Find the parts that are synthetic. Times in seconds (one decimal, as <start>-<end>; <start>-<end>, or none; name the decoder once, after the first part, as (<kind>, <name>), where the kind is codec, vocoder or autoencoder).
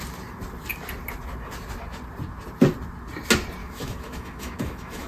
3.6-5.1 (autoencoder, DAC-VAE)